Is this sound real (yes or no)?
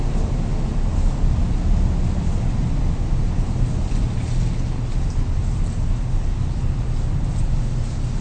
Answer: yes